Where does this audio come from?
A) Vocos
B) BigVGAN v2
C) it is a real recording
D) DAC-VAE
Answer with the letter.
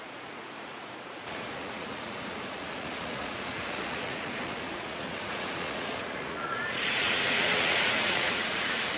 A